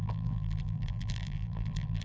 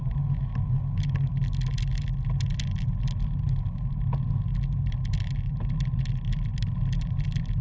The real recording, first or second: second